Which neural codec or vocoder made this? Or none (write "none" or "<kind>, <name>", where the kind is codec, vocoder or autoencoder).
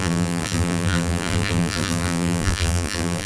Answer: vocoder, BigVGAN v2